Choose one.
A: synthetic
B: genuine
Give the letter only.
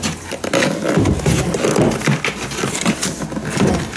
B